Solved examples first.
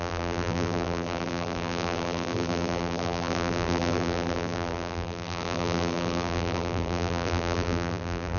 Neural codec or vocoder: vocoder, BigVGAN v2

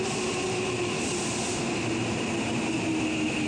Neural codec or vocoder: none